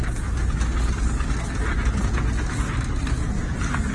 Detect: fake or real real